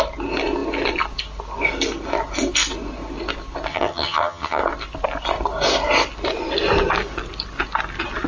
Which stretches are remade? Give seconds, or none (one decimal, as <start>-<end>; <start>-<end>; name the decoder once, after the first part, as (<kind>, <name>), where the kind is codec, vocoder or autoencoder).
3.7-4.6 (vocoder, HiFi-GAN)